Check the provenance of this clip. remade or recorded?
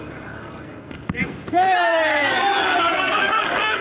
remade